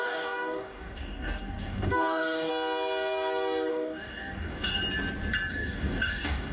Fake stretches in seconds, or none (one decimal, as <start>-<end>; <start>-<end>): 0.0-2.5; 3.7-4.8; 5.5-6.5